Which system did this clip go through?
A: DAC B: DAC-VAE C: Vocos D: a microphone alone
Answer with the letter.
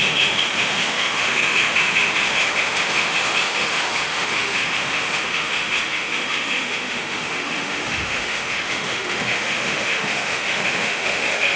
B